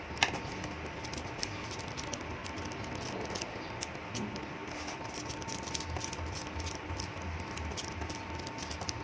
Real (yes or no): yes